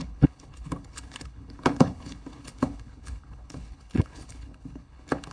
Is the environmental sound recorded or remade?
remade